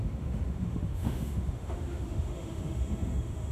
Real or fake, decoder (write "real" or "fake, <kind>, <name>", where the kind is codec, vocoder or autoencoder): fake, autoencoder, DAC-VAE